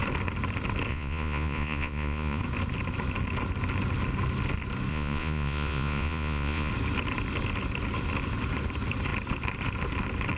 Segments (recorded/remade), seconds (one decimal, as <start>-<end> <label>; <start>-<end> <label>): 0.0-0.9 recorded; 0.9-2.4 remade; 2.4-4.9 recorded; 4.9-6.7 remade; 6.7-10.4 recorded